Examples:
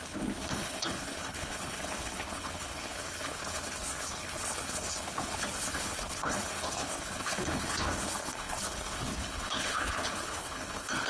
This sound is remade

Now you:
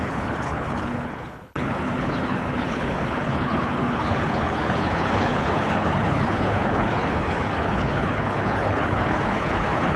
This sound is remade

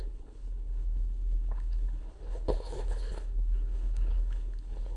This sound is remade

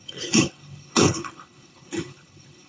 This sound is remade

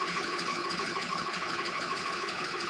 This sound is remade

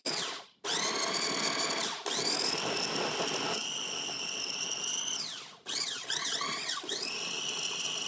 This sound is recorded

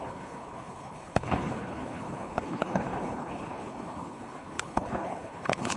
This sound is remade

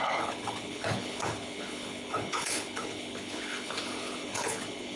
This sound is remade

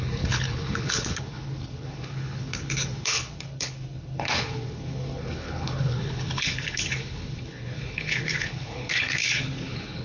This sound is remade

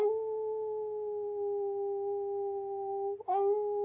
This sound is recorded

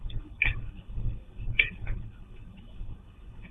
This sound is remade